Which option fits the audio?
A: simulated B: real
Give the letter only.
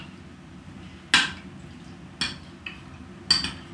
B